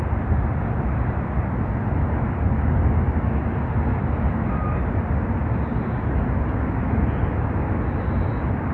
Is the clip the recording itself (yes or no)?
yes